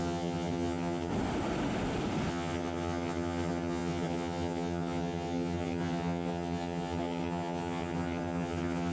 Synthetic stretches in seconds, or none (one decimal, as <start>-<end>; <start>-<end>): 0.0-1.1; 2.3-8.9